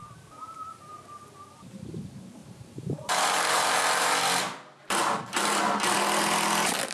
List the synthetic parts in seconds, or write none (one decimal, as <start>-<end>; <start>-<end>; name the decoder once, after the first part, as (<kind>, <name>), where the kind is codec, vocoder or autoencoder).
0.0-0.9 (vocoder, BigVGAN v2); 2.4-4.2